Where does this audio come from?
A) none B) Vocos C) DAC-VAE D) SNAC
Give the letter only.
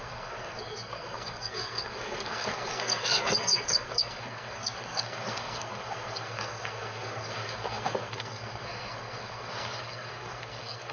D